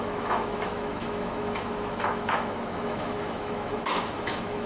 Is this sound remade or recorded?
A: remade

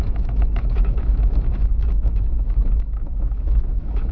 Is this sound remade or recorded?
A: remade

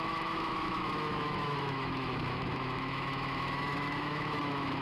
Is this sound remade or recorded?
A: remade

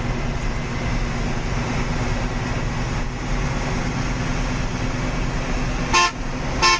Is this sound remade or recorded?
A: recorded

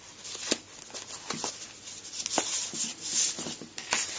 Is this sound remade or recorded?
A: recorded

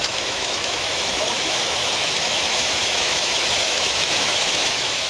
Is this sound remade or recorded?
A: remade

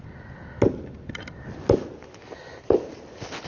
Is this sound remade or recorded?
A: recorded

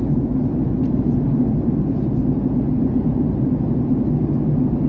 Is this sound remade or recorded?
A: recorded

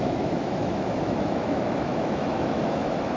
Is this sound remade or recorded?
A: remade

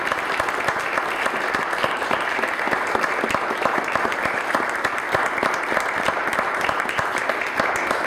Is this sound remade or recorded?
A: recorded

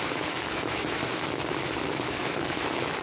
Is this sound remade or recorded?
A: remade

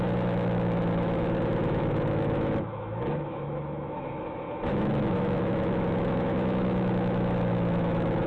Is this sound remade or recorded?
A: remade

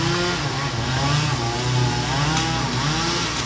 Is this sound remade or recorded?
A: recorded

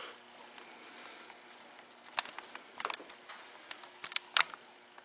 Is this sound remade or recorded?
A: recorded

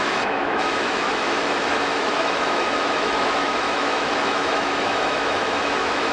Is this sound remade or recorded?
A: remade